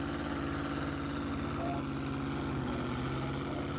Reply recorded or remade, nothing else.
recorded